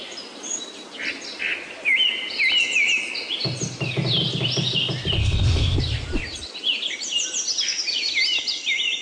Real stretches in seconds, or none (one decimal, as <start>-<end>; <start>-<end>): 0.0-5.2; 5.8-9.0